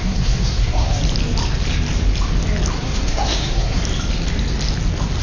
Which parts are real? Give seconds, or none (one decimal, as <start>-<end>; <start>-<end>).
1.0-2.7; 3.8-5.2